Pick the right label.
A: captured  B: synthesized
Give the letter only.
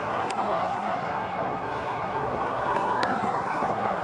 B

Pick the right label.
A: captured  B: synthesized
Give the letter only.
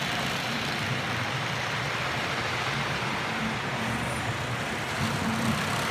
A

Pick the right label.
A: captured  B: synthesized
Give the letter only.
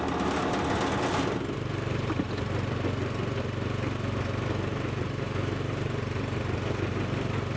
A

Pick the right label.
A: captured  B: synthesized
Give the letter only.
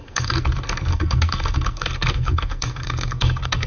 B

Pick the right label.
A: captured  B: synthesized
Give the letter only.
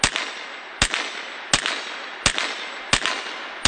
A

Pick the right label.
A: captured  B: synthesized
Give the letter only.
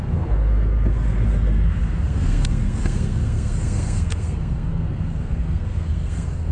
B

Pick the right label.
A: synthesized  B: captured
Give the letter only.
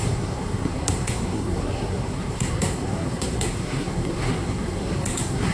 A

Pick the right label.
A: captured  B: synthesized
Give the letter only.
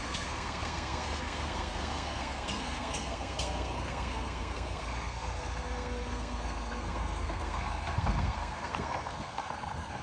B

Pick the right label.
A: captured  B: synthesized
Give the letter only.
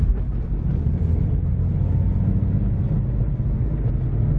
A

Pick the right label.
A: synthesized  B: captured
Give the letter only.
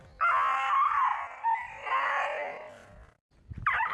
B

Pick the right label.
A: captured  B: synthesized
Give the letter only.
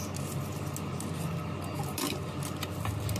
A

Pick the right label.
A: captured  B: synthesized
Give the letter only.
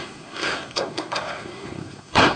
B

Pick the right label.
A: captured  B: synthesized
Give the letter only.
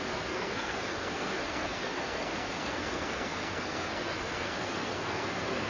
B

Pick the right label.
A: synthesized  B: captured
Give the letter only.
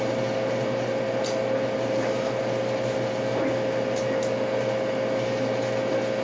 B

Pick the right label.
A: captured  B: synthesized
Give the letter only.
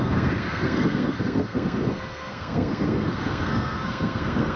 B